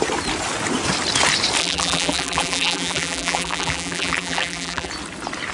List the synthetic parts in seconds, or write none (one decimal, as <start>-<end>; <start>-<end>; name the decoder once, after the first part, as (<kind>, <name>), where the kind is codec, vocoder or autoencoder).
1.6-4.9 (vocoder, BigVGAN v2)